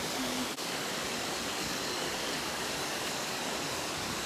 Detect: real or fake fake